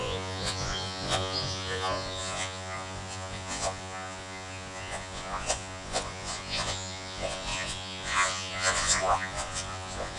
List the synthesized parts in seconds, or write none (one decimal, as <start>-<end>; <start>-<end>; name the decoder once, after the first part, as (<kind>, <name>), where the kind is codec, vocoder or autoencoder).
0.0-10.2 (vocoder, Vocos)